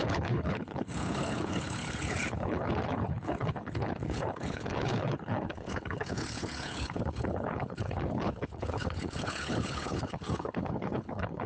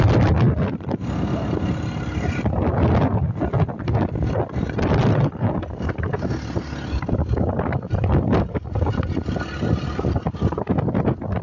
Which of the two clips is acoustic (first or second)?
second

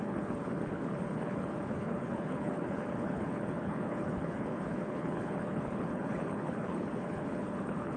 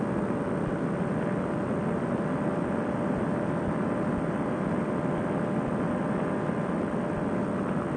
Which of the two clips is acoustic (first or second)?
second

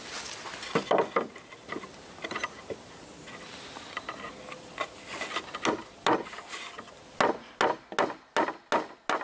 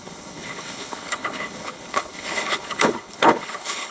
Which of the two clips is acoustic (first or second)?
first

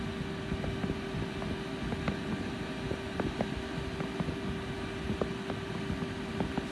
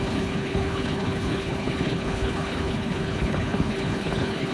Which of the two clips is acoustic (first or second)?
first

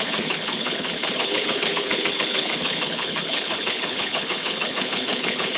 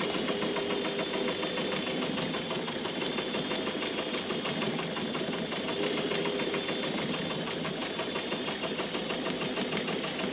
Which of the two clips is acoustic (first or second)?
second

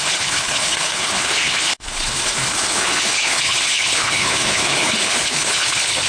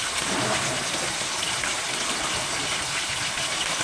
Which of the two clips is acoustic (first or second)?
second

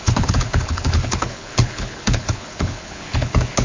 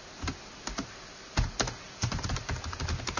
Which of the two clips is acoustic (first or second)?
second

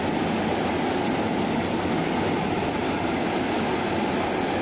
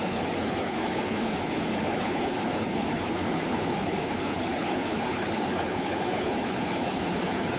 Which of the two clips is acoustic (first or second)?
first